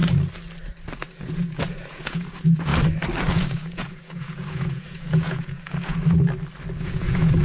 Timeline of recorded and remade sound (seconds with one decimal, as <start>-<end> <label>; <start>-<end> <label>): 0.0-1.2 recorded; 1.2-2.7 remade; 2.7-3.3 recorded; 3.3-6.0 remade; 6.0-6.8 recorded; 6.8-7.4 remade